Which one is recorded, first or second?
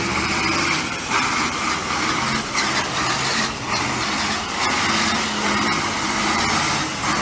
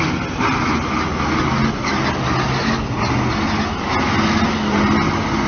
second